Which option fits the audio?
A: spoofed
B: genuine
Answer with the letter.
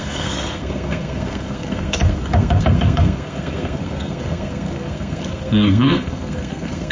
A